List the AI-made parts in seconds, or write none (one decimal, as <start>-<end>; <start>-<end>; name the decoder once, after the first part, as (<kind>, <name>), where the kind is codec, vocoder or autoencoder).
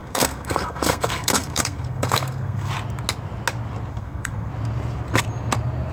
0.0-2.7 (codec, SNAC); 3.9-4.5